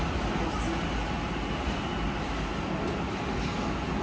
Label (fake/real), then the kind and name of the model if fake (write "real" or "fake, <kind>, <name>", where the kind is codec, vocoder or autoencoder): real